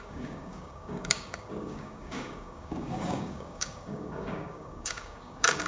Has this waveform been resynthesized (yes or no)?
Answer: yes